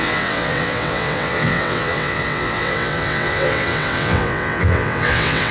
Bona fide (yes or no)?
no